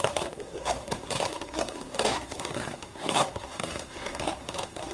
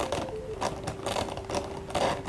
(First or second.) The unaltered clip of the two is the second